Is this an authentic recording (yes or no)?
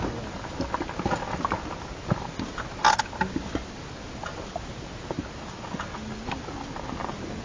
yes